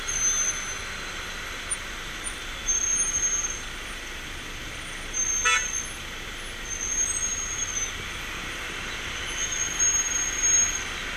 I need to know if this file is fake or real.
real